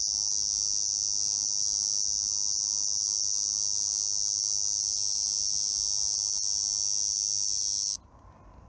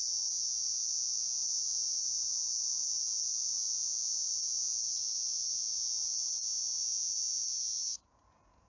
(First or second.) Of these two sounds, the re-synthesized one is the second